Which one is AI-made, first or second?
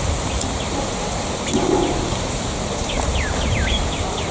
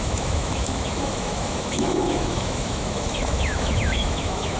second